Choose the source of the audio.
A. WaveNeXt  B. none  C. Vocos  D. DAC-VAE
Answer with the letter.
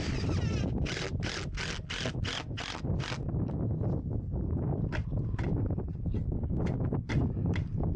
B